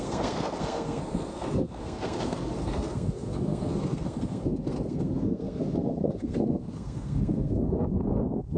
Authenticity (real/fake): fake